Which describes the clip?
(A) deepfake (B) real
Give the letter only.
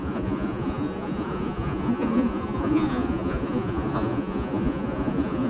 A